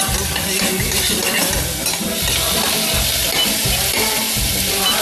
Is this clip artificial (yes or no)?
no